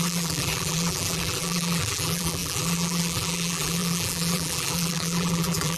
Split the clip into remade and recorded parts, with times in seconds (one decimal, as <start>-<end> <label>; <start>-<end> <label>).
0.0-5.8 remade

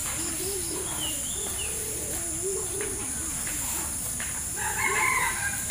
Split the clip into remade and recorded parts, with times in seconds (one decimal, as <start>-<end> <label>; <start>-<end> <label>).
0.0-3.4 recorded; 3.4-5.7 remade

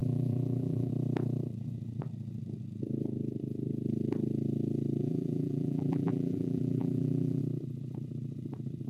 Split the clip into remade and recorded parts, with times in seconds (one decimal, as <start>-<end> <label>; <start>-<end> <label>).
0.0-0.9 remade; 0.9-5.0 recorded; 5.0-7.4 remade; 7.4-8.9 recorded

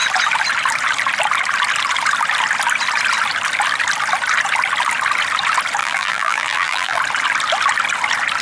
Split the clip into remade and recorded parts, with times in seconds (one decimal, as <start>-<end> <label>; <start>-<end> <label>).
0.0-5.8 recorded; 5.8-7.0 remade; 7.0-8.4 recorded

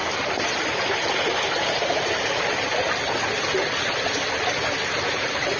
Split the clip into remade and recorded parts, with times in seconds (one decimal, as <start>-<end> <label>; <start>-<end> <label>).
0.0-5.6 recorded

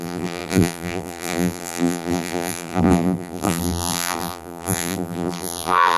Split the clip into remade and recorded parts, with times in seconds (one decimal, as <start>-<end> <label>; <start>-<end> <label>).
0.0-6.0 remade

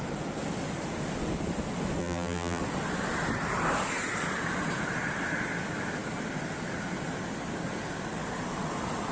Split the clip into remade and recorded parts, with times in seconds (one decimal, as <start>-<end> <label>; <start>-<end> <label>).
0.0-2.0 recorded; 2.0-2.6 remade; 2.6-9.1 recorded